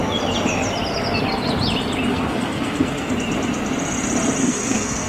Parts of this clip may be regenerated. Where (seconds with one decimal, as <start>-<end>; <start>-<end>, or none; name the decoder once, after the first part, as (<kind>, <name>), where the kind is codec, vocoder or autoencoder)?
2.1-3.1 (codec, SNAC); 4.4-5.1

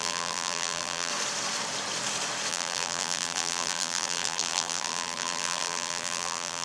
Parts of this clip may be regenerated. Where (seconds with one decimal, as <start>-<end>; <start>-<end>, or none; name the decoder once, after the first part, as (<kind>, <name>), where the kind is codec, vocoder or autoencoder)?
0.0-1.1 (vocoder, BigVGAN v2); 2.5-6.6

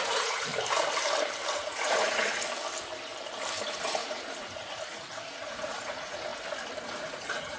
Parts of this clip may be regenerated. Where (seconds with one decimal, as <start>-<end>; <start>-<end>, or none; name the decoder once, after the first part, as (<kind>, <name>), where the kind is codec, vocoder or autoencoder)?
0.0-0.5 (vocoder, Vocos); 1.5-2.3; 3.6-6.3; 6.9-7.6

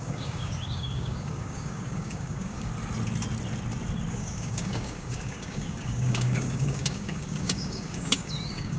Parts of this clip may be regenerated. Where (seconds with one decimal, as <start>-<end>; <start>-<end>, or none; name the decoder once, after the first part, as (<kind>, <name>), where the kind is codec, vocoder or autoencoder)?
0.0-2.7 (codec, DAC); 4.1-8.8

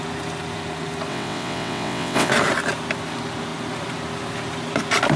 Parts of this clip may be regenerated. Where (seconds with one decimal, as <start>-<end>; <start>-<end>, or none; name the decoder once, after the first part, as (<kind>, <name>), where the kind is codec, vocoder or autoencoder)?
1.1-2.3 (vocoder, WaveNeXt)

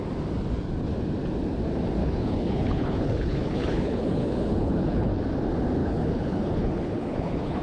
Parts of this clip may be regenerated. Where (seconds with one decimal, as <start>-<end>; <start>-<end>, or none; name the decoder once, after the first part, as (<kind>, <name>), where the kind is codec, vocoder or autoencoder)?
2.0-5.2 (codec, HILCodec); 5.8-7.6

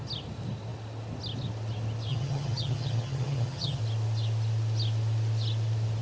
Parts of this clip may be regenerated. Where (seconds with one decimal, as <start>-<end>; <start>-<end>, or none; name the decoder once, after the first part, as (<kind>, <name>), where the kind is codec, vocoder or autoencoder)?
2.1-3.8 (vocoder, HiFi-GAN)